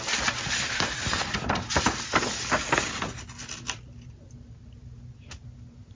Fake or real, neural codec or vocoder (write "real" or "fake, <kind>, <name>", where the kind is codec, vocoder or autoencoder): real